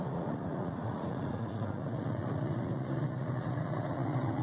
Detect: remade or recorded remade